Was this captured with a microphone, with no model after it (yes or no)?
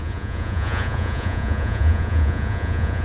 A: no